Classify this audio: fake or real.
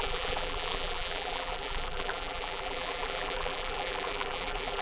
fake